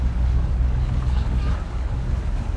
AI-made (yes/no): yes